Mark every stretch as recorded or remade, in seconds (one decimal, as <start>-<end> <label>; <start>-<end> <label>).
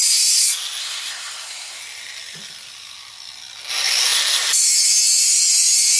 0.0-0.8 recorded; 0.8-1.8 remade; 1.8-6.0 recorded